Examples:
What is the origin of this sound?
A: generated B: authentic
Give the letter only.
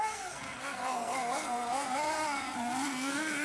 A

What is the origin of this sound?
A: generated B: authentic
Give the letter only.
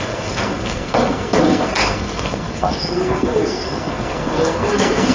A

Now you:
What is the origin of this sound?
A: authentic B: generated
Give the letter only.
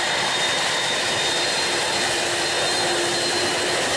A